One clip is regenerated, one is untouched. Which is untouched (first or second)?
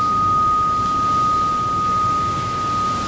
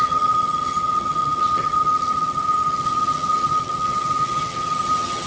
first